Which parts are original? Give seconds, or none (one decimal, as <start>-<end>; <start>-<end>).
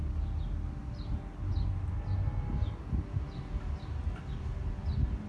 0.0-5.3